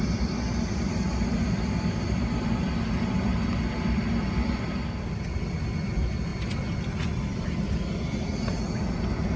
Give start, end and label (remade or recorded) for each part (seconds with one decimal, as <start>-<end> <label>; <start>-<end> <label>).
0.0-9.4 recorded